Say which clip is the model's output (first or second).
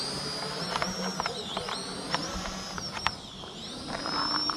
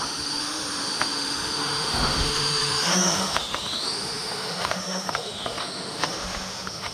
second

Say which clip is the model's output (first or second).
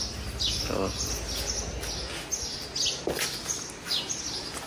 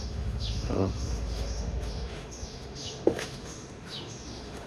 second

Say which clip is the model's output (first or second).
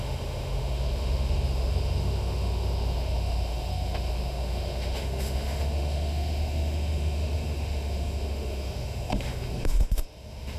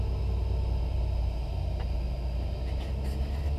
first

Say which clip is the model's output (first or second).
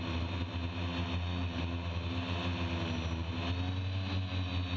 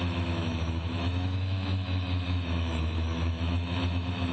second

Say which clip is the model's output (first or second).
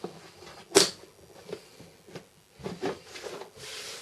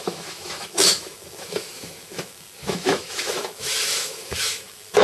second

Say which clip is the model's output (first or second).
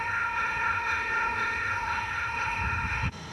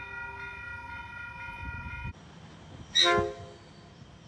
first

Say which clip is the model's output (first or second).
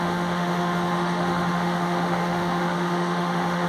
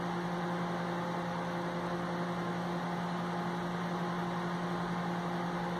first